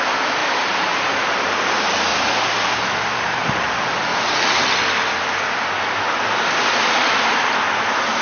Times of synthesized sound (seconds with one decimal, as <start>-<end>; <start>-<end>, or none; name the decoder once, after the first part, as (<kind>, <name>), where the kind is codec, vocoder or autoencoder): 0.4-1.0 (vocoder, BigVGAN v2); 4.1-4.7